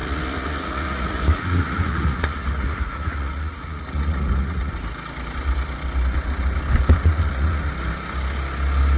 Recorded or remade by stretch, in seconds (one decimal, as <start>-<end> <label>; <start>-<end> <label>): 0.0-4.7 remade; 4.7-7.0 recorded; 7.0-7.7 remade; 7.7-9.0 recorded